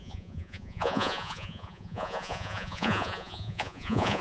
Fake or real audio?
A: fake